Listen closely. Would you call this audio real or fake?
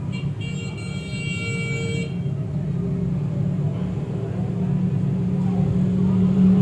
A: real